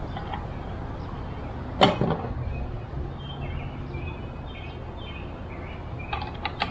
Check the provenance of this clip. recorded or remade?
recorded